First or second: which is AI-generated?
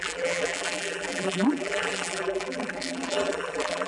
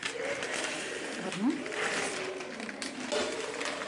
first